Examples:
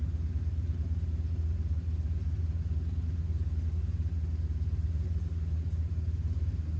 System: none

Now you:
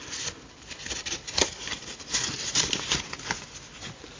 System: none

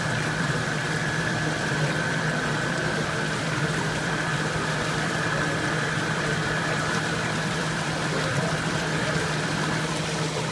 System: vocoder, BigVGAN v2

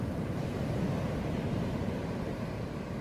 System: vocoder, BigVGAN v2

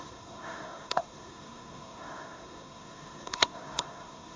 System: codec, SNAC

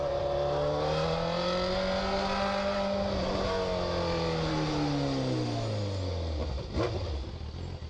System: none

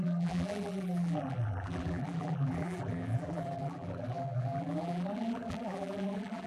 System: vocoder, BigVGAN v2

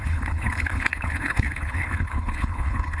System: codec, HILCodec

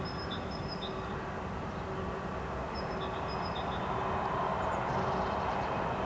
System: none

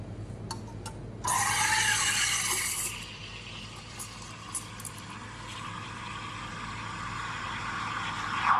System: none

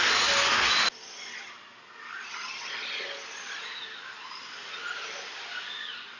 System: none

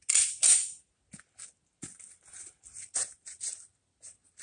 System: none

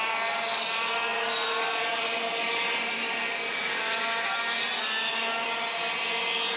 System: none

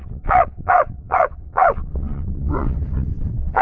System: vocoder, WaveNeXt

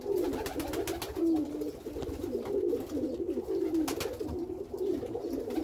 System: none